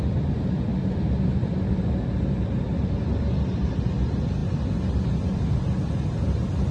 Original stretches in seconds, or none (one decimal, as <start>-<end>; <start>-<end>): 0.0-6.7